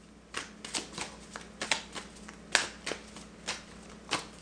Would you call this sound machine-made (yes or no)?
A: no